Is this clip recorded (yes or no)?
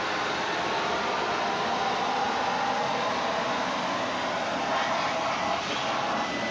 yes